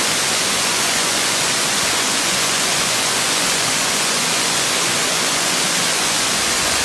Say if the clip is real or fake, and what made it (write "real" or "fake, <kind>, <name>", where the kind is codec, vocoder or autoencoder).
fake, vocoder, Vocos